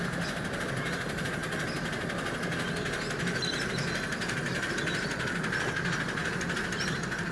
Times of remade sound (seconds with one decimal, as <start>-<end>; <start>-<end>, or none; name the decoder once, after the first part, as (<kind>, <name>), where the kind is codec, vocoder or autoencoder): none